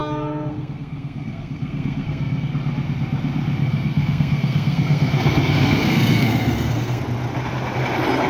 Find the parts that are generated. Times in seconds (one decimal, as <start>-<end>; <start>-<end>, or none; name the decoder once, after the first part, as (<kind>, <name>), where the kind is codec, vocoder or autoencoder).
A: 0.0-2.5 (codec, SNAC); 3.6-7.0